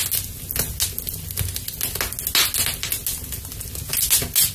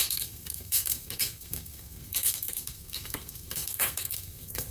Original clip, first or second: first